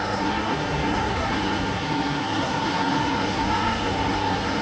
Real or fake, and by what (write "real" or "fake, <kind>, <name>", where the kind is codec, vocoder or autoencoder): fake, codec, SNAC